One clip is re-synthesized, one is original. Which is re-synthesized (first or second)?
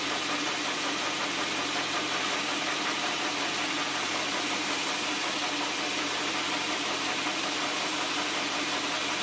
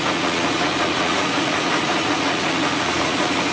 second